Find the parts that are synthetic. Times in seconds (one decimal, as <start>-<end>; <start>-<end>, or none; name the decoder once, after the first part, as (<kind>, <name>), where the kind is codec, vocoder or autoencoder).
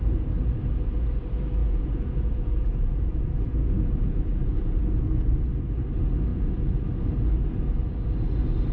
1.6-5.0 (vocoder, Vocos); 6.3-6.9